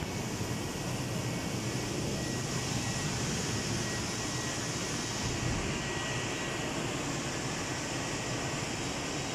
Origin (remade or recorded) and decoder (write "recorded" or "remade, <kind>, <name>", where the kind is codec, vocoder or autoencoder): recorded